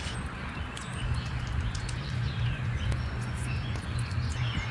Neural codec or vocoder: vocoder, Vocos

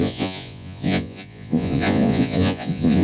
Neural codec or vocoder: vocoder, Vocos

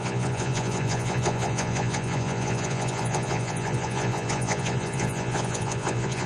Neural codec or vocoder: vocoder, Vocos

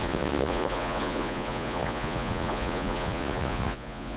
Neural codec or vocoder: vocoder, Vocos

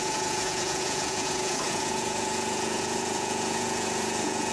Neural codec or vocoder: vocoder, Vocos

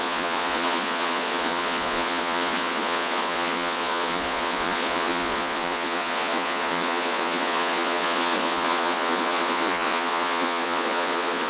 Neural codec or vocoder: vocoder, Vocos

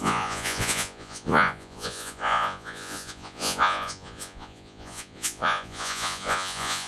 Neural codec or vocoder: vocoder, Vocos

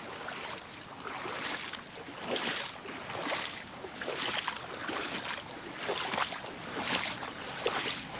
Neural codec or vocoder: none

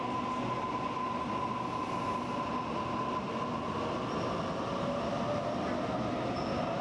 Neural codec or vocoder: none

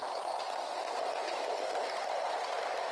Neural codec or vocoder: none